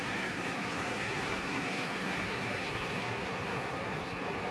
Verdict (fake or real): fake